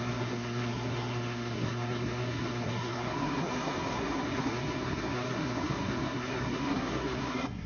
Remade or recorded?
remade